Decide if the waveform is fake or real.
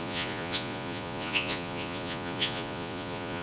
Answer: fake